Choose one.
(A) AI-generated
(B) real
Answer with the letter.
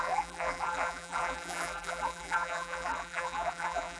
A